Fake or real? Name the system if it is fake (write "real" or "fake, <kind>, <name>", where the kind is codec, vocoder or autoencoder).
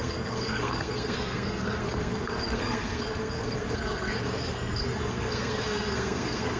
fake, codec, SNAC